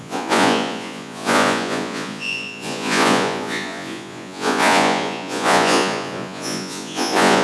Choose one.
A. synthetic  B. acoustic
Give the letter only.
A